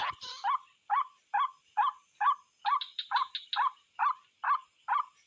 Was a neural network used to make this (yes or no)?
no